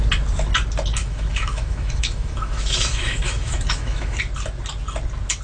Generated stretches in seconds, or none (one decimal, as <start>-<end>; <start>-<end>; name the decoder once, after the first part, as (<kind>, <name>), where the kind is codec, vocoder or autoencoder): 1.0-4.2 (autoencoder, DAC-VAE)